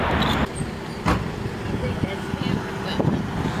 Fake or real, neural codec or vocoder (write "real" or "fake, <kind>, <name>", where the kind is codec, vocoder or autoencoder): real